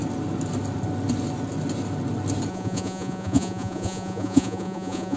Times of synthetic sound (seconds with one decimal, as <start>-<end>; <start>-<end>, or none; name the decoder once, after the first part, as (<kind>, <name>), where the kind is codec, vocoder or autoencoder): 2.5-5.2 (vocoder, Vocos)